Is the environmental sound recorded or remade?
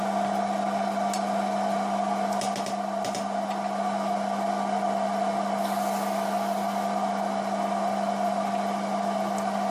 recorded